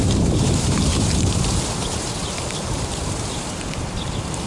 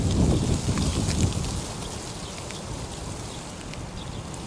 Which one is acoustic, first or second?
second